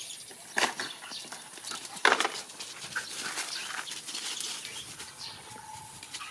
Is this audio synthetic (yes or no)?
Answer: no